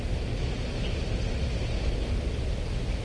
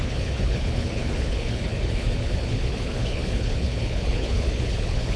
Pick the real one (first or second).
first